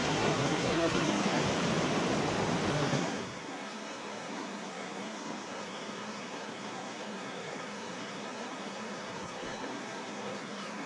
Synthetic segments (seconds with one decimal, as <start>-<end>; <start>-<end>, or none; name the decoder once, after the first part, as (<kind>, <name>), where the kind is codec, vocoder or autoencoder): 0.0-1.4 (codec, SNAC); 2.7-10.9